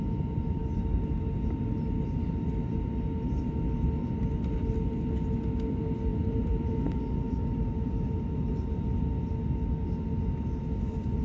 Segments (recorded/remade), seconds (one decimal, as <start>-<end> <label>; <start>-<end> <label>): 0.0-6.1 recorded; 6.1-8.5 remade; 8.5-11.2 recorded